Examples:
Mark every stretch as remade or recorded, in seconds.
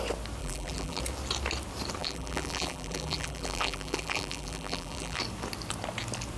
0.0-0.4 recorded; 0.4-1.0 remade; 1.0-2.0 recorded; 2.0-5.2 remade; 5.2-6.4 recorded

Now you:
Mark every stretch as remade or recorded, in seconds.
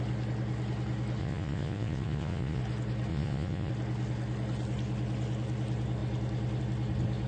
0.0-1.2 recorded; 1.2-2.6 remade; 2.6-3.1 recorded; 3.1-3.7 remade; 3.7-7.3 recorded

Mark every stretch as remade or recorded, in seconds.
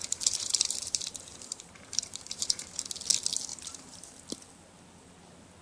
0.0-2.8 remade; 2.8-3.5 recorded; 3.5-4.1 remade; 4.1-5.6 recorded